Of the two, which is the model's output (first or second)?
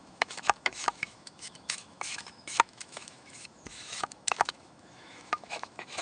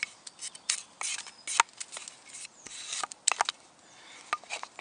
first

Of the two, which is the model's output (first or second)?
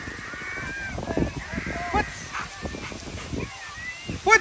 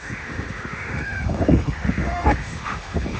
second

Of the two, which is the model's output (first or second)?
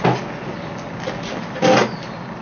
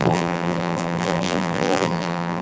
second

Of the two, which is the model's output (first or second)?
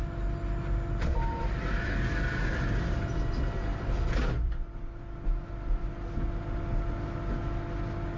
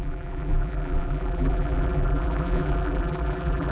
second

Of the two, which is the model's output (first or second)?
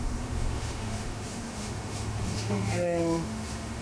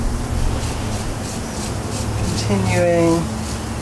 first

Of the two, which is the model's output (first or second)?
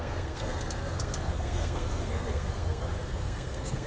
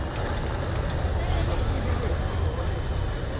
first